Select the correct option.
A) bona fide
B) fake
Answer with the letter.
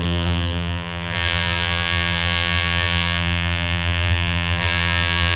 B